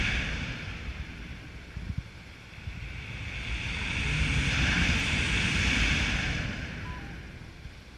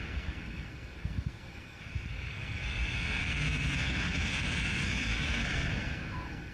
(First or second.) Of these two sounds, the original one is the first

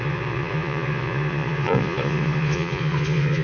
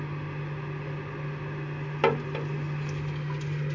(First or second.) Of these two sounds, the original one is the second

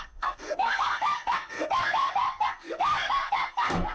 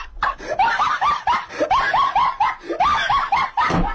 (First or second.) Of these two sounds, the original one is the second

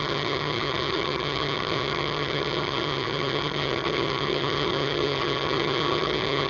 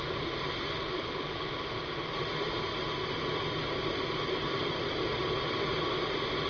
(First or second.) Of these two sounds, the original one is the second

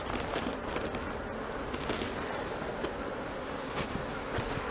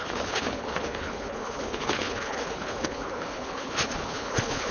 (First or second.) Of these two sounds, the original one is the first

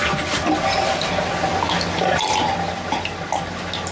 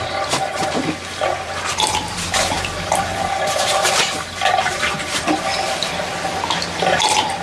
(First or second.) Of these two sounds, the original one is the first